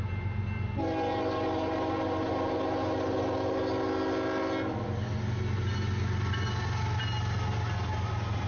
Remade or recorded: recorded